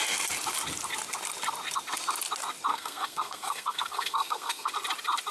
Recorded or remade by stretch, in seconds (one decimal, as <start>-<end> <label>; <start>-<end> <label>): 0.0-2.7 recorded; 2.7-4.7 remade; 4.7-5.3 recorded